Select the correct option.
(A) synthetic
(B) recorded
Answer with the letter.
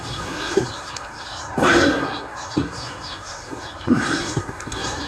A